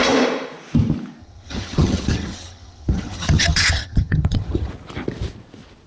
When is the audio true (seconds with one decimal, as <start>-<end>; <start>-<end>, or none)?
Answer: 0.0-1.2; 4.7-5.9